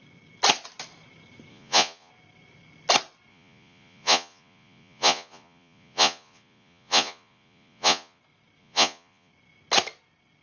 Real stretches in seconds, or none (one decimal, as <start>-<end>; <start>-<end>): 0.0-1.5; 2.1-3.3; 8.2-8.6; 9.3-10.4